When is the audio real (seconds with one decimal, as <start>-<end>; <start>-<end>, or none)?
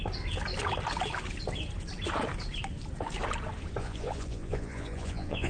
0.0-3.8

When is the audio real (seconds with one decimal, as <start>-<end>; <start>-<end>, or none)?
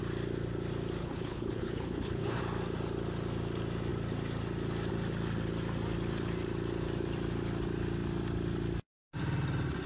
0.0-1.0; 2.4-9.9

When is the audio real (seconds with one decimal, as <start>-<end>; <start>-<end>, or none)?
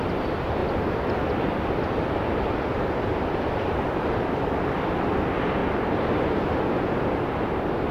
0.6-1.3; 5.6-7.3